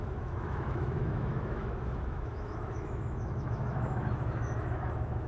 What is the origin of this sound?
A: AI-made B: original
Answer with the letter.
A